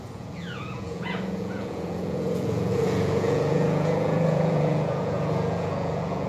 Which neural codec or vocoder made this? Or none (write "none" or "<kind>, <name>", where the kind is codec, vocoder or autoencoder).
vocoder, Vocos